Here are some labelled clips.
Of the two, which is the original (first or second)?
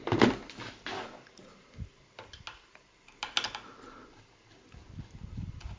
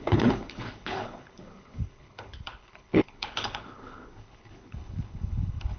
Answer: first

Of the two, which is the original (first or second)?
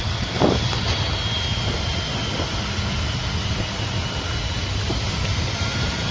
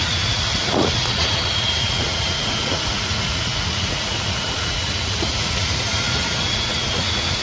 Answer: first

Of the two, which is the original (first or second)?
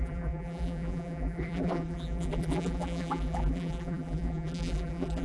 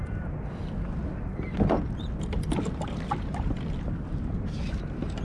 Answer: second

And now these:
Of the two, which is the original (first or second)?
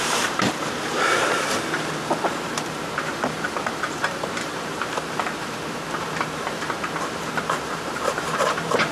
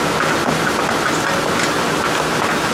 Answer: second